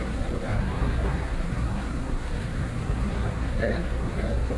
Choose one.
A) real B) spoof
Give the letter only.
B